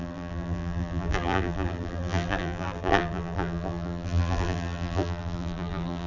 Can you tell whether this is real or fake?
fake